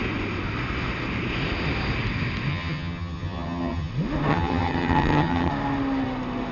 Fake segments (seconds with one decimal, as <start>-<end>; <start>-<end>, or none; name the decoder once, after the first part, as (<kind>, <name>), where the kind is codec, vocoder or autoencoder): 2.5-3.9 (vocoder, HiFi-GAN); 4.3-5.5